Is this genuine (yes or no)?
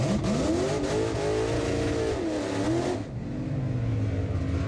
yes